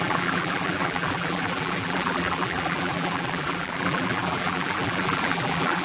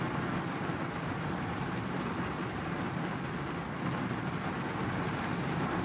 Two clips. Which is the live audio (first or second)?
second